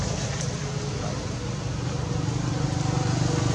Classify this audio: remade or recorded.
recorded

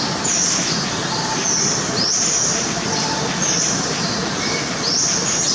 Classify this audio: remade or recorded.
recorded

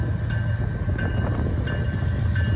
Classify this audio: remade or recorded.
recorded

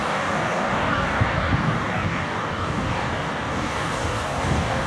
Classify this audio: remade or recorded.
remade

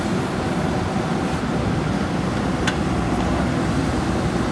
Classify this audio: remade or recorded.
recorded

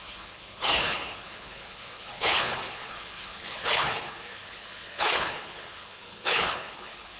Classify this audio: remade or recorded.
remade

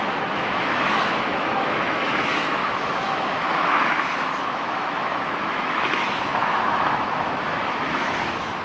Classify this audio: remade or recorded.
remade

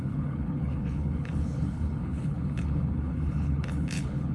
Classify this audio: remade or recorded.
remade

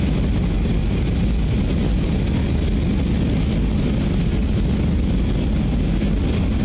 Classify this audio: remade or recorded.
recorded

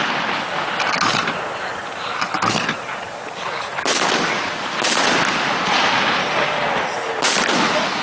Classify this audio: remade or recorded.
recorded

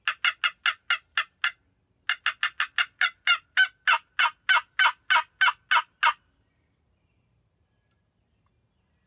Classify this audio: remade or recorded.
recorded